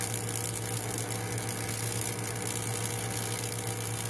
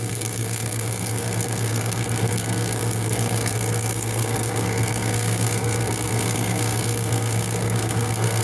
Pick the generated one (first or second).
second